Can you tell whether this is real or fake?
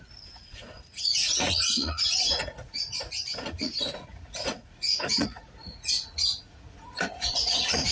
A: fake